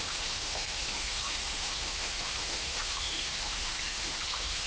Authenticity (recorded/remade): remade